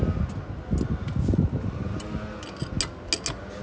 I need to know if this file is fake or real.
real